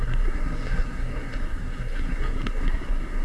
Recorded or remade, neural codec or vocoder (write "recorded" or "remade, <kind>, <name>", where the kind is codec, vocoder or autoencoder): remade, codec, SNAC